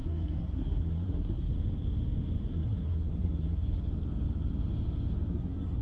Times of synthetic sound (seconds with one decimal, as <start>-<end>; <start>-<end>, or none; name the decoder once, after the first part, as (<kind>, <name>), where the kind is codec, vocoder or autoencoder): 0.0-1.5 (codec, SNAC); 2.5-3.8; 5.3-5.8